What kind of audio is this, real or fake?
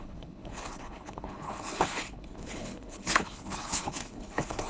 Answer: fake